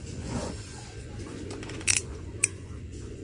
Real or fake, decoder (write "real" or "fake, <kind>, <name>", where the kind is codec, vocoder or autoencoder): fake, vocoder, Vocos